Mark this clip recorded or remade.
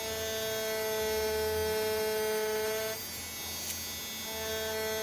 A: recorded